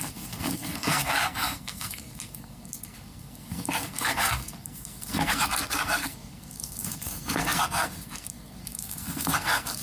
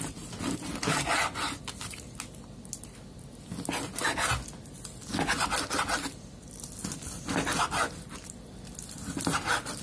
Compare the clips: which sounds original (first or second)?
second